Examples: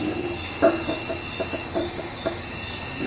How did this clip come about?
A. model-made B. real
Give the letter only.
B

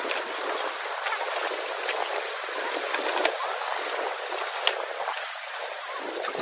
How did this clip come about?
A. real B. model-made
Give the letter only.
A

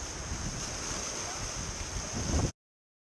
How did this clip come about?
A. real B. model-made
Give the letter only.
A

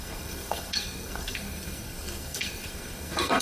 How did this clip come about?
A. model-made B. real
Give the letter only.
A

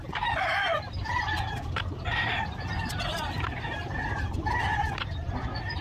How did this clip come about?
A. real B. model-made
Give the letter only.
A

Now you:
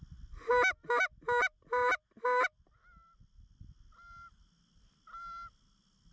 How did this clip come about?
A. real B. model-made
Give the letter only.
A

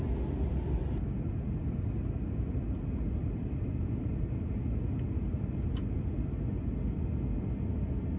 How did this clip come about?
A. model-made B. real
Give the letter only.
B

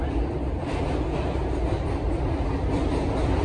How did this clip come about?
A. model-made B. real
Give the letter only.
B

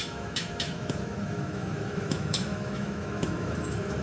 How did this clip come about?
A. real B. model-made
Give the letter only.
B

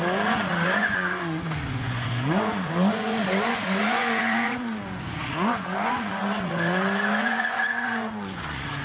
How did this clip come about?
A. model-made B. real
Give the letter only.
A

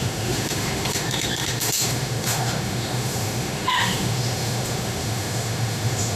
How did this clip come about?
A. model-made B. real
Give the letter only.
A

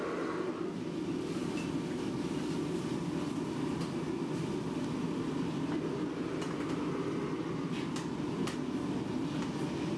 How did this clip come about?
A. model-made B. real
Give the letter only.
B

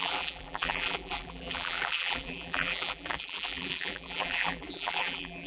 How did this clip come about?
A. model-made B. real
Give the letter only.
A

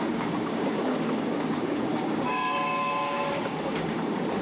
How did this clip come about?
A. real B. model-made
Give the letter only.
B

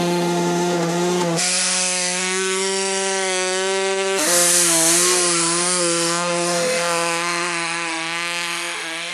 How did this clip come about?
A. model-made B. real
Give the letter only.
A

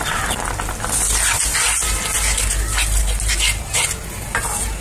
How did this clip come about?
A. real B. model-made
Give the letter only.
A